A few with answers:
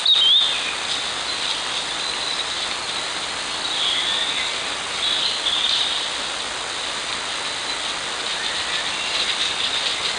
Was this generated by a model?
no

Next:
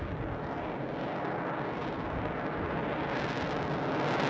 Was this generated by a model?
no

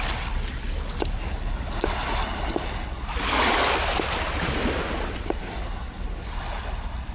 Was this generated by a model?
no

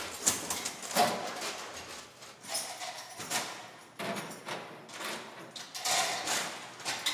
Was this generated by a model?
no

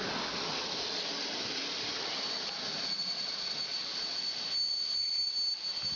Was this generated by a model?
no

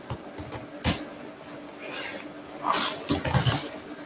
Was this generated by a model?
no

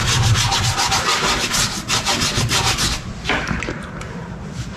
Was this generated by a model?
no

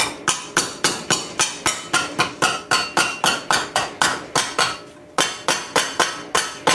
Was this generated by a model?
no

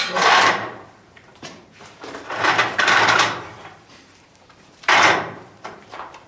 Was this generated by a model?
yes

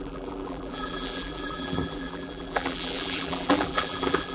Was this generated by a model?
yes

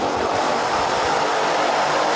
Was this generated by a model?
yes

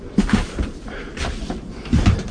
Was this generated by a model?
no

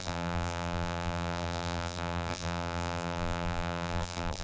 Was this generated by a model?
yes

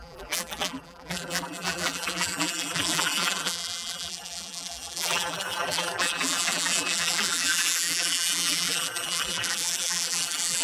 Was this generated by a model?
yes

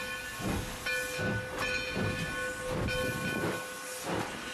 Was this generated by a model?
no